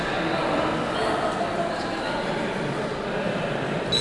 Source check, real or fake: real